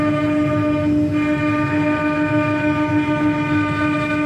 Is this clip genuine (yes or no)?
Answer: yes